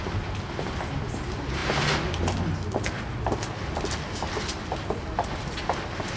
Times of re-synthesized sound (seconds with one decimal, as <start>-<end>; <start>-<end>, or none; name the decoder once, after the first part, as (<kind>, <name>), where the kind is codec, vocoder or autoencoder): none